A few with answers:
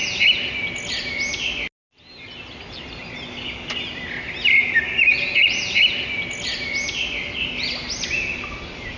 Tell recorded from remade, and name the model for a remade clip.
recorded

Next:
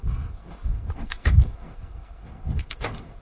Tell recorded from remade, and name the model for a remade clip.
remade, codec, SNAC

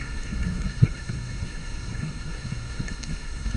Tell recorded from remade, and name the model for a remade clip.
remade, codec, SNAC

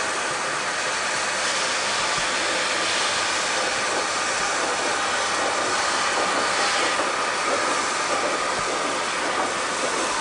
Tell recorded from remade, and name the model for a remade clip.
recorded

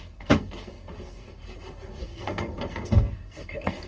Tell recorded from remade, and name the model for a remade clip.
remade, codec, SNAC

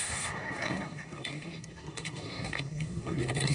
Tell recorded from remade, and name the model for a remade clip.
remade, codec, SNAC